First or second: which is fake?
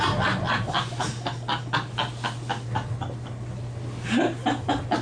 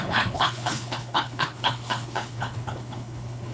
second